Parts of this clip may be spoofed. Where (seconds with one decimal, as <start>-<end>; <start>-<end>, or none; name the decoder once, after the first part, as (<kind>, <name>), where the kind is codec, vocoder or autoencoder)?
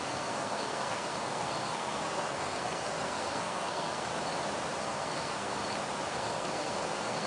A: 0.0-4.1 (codec, SNAC); 4.8-5.6; 6.1-7.3